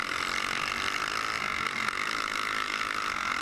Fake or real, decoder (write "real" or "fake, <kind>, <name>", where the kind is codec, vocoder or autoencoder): real